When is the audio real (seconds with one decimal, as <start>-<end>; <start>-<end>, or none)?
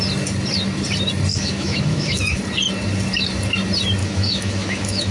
0.0-1.3; 2.4-4.0